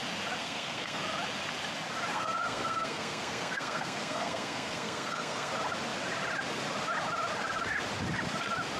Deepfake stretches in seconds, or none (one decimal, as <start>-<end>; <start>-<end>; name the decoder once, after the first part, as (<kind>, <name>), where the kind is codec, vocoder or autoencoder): 0.4-1.0 (codec, SNAC); 2.1-5.5